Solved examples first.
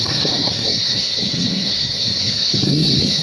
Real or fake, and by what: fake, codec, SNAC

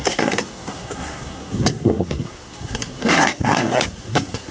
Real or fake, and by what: fake, codec, SNAC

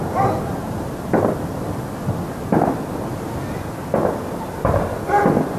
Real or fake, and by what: real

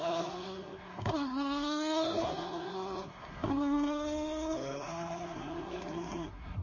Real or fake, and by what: fake, codec, SNAC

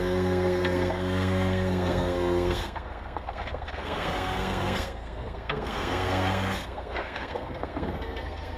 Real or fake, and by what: fake, codec, SNAC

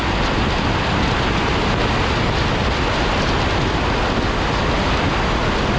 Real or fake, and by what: real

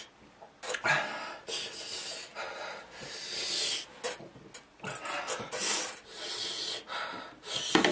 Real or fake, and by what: real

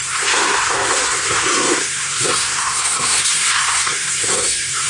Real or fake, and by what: fake, codec, SNAC